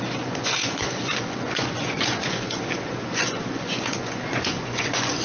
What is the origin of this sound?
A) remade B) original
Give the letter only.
A